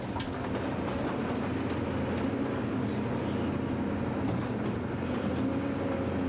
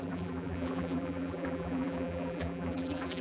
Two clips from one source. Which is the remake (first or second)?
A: second